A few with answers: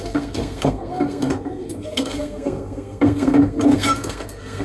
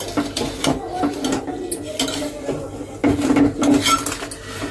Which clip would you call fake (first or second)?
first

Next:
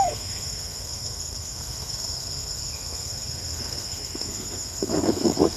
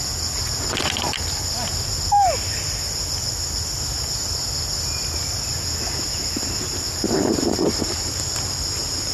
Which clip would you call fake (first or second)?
first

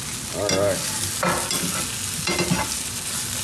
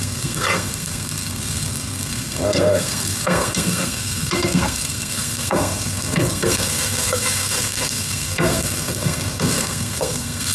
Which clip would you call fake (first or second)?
second